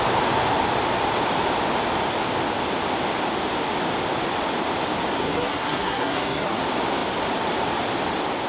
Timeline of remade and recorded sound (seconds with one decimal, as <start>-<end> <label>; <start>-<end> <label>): 0.0-5.2 recorded; 5.2-6.6 remade; 6.6-8.5 recorded